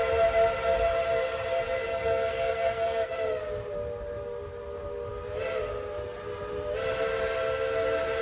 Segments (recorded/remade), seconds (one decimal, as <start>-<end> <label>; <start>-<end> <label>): 0.0-1.9 recorded; 1.9-3.4 remade; 3.4-8.2 recorded